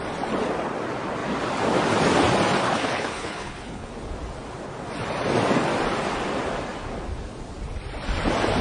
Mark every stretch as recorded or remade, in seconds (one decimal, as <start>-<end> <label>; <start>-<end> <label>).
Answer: 0.0-2.6 recorded; 2.6-3.9 remade; 3.9-8.6 recorded